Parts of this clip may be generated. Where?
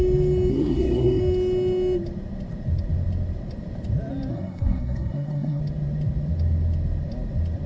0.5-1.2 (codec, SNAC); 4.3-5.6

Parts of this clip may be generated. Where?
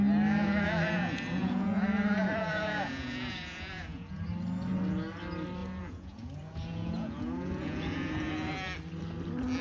0.4-4.2 (vocoder, Vocos); 5.6-8.5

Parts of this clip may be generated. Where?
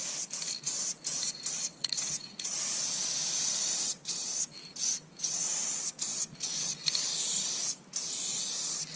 1.7-3.0 (vocoder, Vocos)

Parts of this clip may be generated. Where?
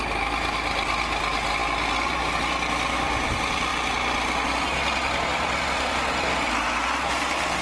5.3-6.5 (vocoder, BigVGAN v2)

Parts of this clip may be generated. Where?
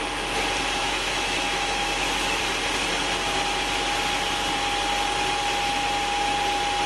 0.8-2.4 (autoencoder, DAC-VAE)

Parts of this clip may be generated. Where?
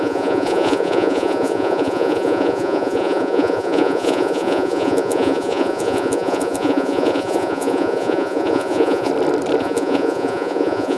0.0-9.1 (vocoder, Vocos); 9.6-11.0